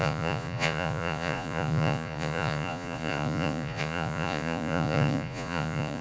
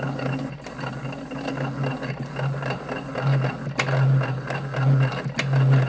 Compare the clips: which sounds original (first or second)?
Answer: second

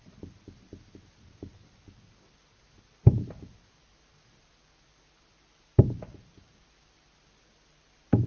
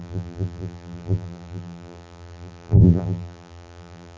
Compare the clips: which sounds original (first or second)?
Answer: first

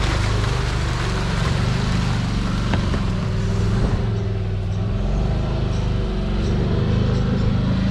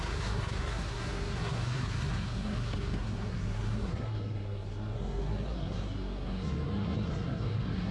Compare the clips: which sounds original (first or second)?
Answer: first